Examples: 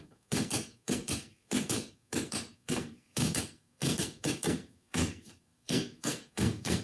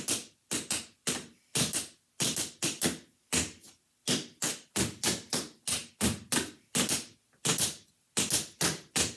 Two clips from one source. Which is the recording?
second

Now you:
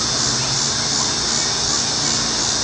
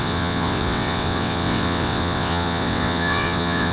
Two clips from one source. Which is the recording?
first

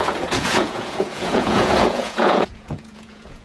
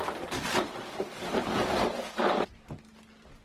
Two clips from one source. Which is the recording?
second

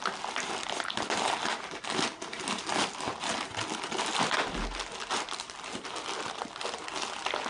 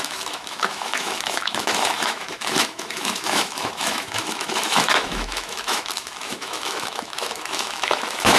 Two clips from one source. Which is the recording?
first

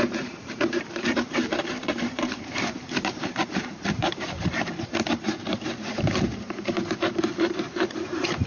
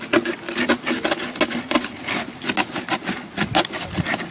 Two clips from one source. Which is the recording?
second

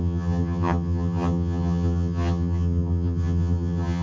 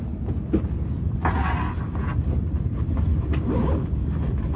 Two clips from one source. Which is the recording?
second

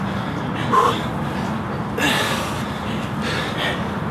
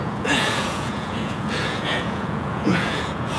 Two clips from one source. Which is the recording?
first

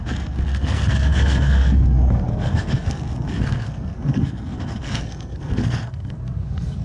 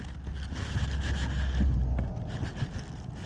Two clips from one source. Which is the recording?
second